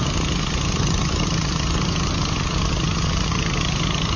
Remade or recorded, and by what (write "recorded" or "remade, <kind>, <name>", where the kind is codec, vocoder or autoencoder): recorded